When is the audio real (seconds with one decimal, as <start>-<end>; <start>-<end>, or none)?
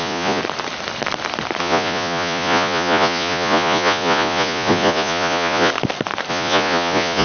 0.4-1.6; 5.7-6.3